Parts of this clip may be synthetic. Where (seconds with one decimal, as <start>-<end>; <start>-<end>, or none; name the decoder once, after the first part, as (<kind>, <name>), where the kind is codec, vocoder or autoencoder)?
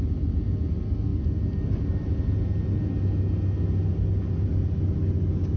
none